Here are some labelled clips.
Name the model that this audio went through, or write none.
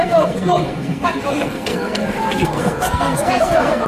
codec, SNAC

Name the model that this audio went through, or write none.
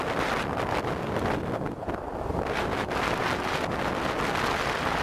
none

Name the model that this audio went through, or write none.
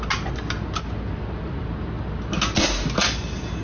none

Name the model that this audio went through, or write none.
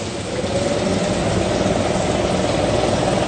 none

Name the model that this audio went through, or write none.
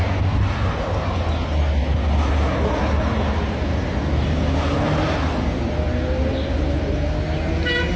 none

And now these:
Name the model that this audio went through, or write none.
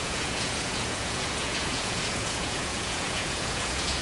vocoder, Vocos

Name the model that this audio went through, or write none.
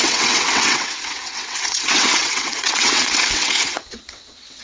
vocoder, WaveNeXt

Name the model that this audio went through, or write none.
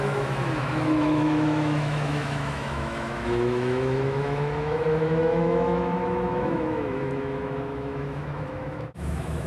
autoencoder, DAC-VAE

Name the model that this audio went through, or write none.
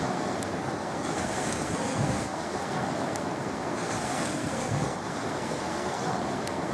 codec, SNAC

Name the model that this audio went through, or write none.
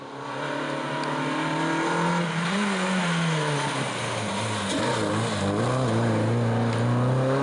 none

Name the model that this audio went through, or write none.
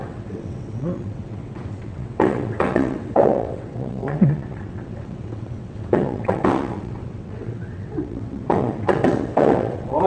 vocoder, WaveNeXt